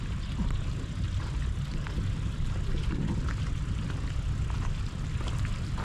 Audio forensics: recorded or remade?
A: recorded